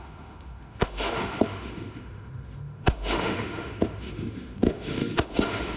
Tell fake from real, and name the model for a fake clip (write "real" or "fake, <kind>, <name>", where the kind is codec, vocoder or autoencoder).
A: fake, autoencoder, DAC-VAE